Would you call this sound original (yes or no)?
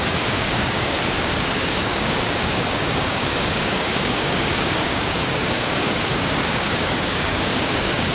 no